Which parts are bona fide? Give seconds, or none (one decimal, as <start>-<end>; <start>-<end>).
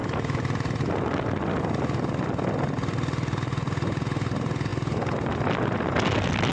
0.0-6.5